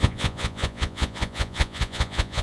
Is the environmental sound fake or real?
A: fake